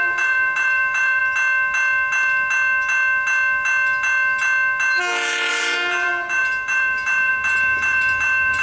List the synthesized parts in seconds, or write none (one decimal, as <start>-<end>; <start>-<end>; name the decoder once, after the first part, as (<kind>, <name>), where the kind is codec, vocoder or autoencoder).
0.0-1.2 (vocoder, BigVGAN v2); 5.5-8.6